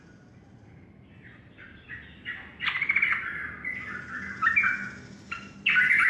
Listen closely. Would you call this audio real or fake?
real